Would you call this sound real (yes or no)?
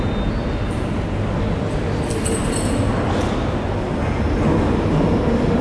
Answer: yes